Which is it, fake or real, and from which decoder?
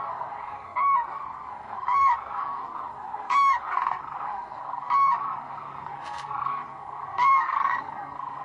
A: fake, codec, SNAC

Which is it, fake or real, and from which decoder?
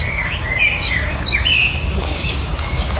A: fake, codec, DAC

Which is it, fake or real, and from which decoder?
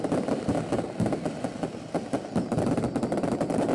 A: real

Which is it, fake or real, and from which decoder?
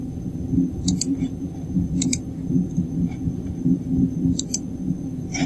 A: fake, vocoder, BigVGAN v2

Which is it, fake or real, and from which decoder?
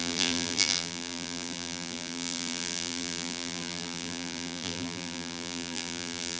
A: fake, vocoder, BigVGAN v2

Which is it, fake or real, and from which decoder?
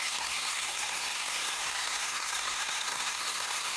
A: fake, codec, SNAC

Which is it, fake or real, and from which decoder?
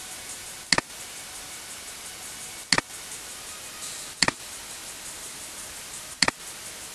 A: real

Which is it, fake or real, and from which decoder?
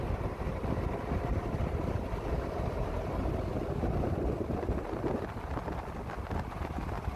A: real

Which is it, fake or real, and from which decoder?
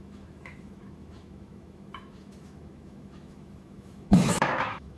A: fake, autoencoder, DAC-VAE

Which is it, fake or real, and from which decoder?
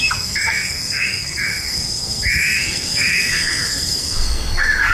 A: fake, codec, SNAC